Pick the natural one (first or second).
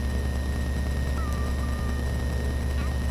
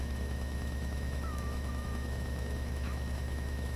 first